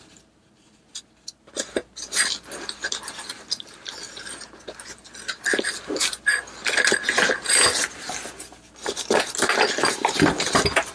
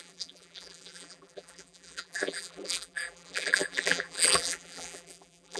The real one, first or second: first